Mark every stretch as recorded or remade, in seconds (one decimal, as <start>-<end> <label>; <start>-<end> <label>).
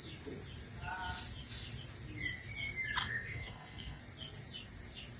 0.0-3.0 recorded; 3.0-4.0 remade; 4.0-5.2 recorded